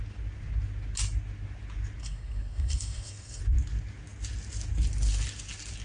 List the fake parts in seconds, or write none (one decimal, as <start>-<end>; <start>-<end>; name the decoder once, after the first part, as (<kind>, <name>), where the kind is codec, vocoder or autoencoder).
2.0-3.4 (codec, SNAC)